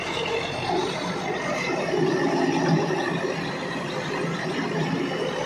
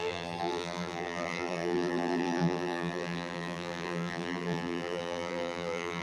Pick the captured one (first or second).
first